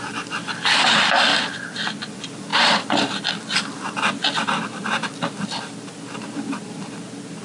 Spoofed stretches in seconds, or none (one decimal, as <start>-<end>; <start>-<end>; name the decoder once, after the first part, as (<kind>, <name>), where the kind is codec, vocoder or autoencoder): 1.3-2.1 (vocoder, BigVGAN v2); 2.5-3.3

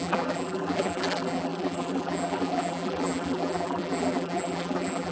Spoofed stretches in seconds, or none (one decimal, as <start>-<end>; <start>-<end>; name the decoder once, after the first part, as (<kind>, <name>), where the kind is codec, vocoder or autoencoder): 0.0-5.1 (vocoder, BigVGAN v2)

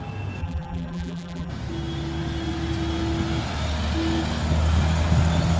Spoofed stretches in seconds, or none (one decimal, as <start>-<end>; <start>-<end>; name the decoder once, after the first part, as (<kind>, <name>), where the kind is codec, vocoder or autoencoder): 0.4-1.5 (vocoder, BigVGAN v2)

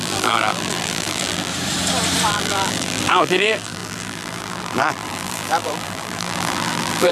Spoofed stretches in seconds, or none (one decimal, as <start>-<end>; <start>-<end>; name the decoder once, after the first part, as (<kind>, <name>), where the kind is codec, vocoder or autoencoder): 0.0-1.5 (vocoder, BigVGAN v2); 2.3-7.1

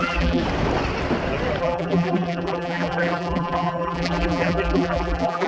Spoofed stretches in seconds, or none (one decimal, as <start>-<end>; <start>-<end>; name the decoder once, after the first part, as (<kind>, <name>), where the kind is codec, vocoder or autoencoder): 0.0-0.4 (vocoder, BigVGAN v2); 1.6-5.5

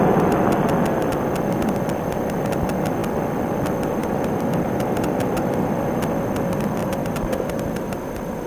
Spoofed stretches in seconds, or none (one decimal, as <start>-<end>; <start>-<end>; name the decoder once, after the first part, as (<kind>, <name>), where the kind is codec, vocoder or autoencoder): 4.0-5.8 (vocoder, BigVGAN v2); 6.8-8.5

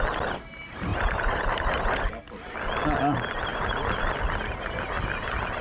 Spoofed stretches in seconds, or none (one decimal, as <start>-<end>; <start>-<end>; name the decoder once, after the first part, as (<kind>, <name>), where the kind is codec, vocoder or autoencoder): 0.9-2.1 (vocoder, BigVGAN v2); 3.5-4.0